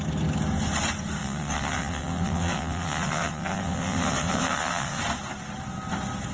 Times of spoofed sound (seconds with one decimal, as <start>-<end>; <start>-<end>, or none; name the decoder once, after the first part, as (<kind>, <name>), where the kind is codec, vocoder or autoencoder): 1.2-5.0 (vocoder, WaveNeXt)